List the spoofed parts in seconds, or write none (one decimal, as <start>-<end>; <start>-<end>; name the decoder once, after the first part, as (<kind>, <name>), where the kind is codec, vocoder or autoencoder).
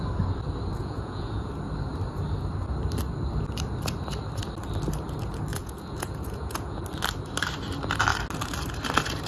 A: 0.7-1.5 (vocoder, Vocos); 5.5-6.8